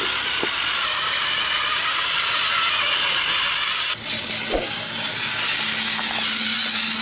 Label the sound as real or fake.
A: real